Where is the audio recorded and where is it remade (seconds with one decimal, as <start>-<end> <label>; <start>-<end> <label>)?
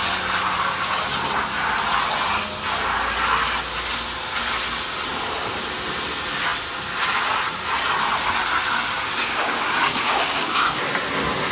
0.0-9.2 recorded; 9.2-10.8 remade; 10.8-11.5 recorded